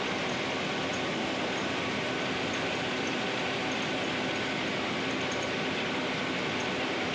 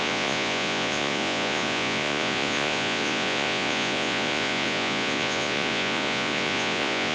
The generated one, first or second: second